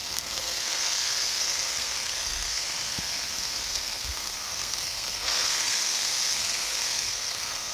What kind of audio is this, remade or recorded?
remade